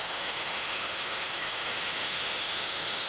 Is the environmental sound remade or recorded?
remade